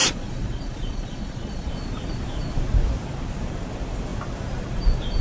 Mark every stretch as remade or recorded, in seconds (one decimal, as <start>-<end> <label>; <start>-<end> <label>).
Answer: 0.0-1.7 remade; 1.7-5.2 recorded

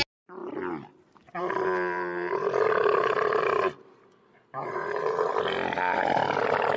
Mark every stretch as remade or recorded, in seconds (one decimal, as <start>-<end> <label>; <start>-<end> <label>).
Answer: 0.0-4.6 recorded; 4.6-5.3 remade; 5.3-6.8 recorded

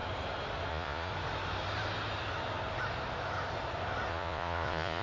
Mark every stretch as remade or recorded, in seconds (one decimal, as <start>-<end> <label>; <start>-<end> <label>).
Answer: 0.0-0.7 recorded; 0.7-1.1 remade; 1.1-4.1 recorded; 4.1-5.0 remade

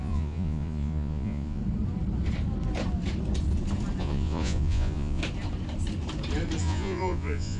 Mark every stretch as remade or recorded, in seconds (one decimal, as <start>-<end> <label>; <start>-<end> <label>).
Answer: 0.0-1.6 remade; 1.6-4.0 recorded; 4.0-5.2 remade; 5.2-6.6 recorded; 6.6-7.6 remade

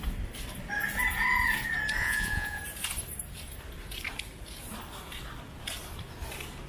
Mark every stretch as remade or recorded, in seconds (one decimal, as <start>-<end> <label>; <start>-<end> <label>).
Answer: 0.0-2.0 recorded; 2.0-2.6 remade; 2.6-6.7 recorded

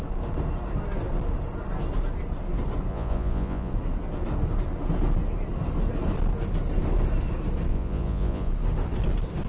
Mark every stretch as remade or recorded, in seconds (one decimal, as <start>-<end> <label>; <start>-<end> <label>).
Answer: 0.0-2.9 recorded; 2.9-3.7 remade; 3.7-7.7 recorded; 7.7-8.5 remade; 8.5-9.5 recorded

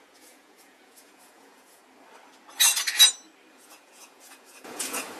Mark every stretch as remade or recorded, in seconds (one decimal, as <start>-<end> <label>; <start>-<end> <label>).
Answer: 0.0-1.8 remade; 1.8-3.5 recorded; 3.5-5.2 remade

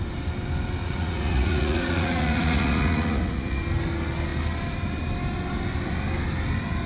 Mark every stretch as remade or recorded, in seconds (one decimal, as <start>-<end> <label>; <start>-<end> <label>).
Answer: 0.0-0.8 recorded; 0.8-3.6 remade; 3.6-6.9 recorded